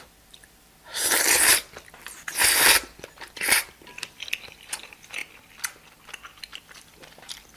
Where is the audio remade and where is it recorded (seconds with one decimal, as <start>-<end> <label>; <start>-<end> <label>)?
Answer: 0.0-1.5 remade; 1.5-2.7 recorded; 2.7-5.2 remade; 5.2-6.6 recorded; 6.6-7.6 remade